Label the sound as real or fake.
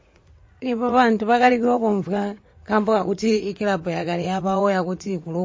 fake